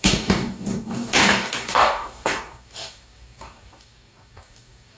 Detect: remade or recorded remade